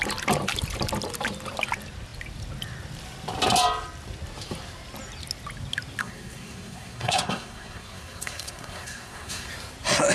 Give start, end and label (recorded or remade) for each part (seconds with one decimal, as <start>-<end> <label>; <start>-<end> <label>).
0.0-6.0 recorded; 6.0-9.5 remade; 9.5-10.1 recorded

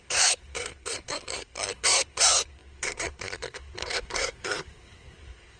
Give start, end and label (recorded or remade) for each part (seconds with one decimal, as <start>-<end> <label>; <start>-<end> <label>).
0.0-5.6 remade

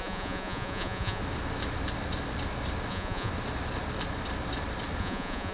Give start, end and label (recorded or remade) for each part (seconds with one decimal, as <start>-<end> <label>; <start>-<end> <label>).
0.0-1.2 remade; 1.2-2.9 recorded; 2.9-3.3 remade; 3.3-5.0 recorded; 5.0-5.5 remade

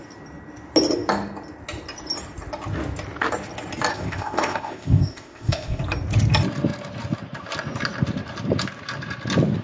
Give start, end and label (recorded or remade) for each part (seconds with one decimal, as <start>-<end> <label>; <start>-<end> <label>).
0.0-3.9 recorded; 3.9-5.8 remade; 5.8-9.6 recorded